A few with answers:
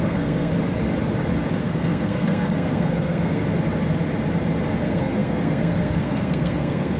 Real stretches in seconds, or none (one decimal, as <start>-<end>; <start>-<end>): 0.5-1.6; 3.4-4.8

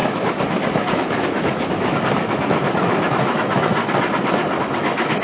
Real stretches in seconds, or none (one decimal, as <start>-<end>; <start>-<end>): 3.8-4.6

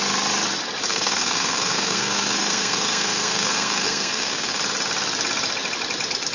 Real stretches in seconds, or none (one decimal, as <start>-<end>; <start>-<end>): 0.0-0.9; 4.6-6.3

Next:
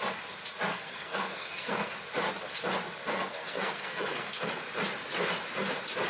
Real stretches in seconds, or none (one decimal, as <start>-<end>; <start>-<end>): 0.0-0.7; 1.9-3.1; 4.5-6.1